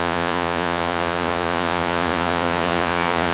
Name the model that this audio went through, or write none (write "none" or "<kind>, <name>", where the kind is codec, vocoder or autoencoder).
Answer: vocoder, Vocos